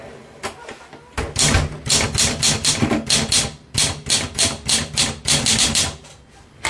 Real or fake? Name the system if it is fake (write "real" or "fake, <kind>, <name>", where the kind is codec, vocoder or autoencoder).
real